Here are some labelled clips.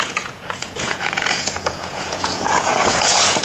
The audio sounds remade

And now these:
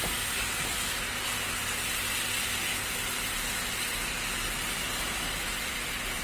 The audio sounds recorded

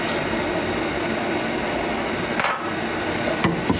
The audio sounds recorded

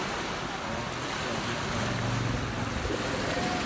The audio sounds recorded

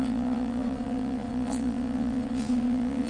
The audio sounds remade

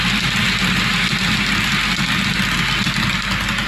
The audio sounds recorded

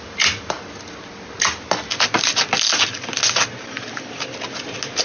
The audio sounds recorded